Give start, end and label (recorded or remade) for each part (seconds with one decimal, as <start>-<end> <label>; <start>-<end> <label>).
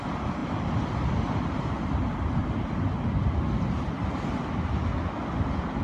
0.0-5.8 recorded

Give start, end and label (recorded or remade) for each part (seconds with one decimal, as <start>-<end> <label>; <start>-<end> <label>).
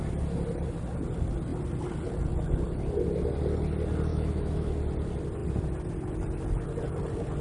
0.0-4.1 recorded; 4.1-4.7 remade; 4.7-7.4 recorded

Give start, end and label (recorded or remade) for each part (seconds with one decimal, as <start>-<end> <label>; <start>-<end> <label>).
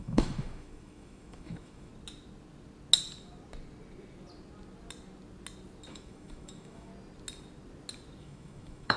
0.0-1.9 remade; 1.9-5.9 recorded; 5.9-6.9 remade; 6.9-8.2 recorded; 8.2-9.0 remade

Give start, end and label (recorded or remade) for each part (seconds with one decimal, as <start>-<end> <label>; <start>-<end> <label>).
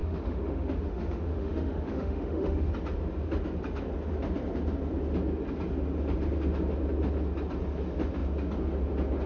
0.0-2.7 remade; 2.7-9.3 recorded